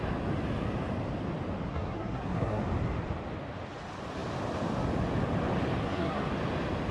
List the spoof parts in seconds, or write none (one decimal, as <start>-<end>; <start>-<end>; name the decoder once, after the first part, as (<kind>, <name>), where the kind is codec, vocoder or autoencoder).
1.7-2.6 (codec, SNAC); 5.8-6.3